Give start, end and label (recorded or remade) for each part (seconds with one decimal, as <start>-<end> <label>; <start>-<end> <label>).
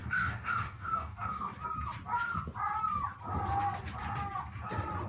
0.0-1.5 remade; 1.5-5.1 recorded